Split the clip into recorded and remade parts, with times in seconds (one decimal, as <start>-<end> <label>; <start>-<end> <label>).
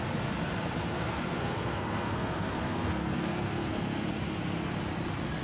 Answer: 0.0-0.9 recorded; 0.9-4.1 remade; 4.1-5.4 recorded